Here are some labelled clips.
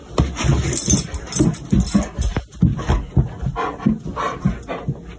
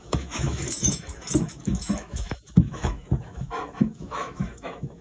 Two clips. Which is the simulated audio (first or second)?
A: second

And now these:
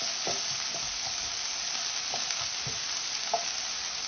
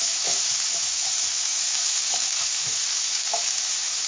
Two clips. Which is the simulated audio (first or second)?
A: second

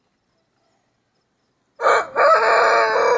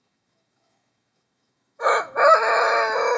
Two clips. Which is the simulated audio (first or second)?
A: second